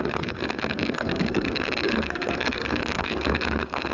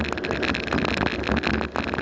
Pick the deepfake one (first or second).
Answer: first